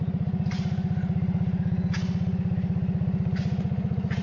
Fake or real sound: real